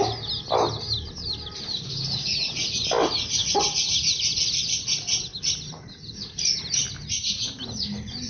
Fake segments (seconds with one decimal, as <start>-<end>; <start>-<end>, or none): 3.4-7.1